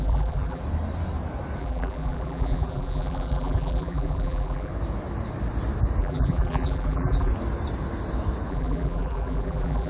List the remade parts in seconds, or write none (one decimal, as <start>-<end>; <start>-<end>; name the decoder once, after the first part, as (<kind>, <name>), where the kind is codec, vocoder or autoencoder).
0.0-0.6 (vocoder, BigVGAN v2); 1.6-4.7; 6.0-7.3; 8.5-9.9